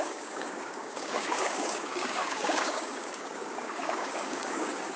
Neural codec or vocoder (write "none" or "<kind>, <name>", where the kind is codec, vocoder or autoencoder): codec, DAC